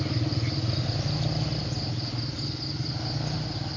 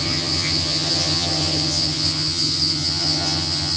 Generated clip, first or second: second